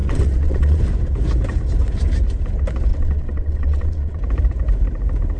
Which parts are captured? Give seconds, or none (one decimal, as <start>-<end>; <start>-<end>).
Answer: 0.8-2.9; 4.2-5.4